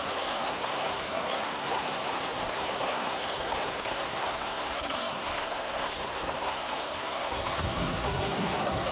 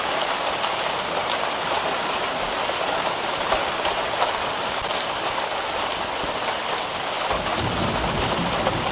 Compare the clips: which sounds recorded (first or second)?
second